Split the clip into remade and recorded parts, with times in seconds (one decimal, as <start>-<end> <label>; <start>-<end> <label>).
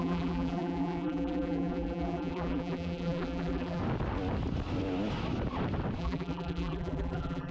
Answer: 0.0-3.8 remade; 3.8-6.0 recorded; 6.0-7.5 remade